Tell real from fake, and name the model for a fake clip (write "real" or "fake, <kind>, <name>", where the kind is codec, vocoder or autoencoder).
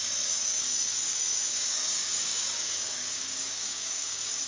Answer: fake, codec, DAC